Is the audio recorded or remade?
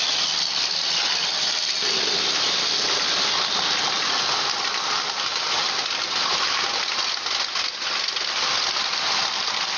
recorded